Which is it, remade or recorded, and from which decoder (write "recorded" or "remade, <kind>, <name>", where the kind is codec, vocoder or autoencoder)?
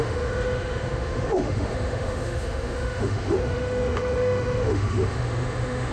remade, autoencoder, DAC-VAE